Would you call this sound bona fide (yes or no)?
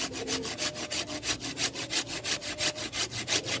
yes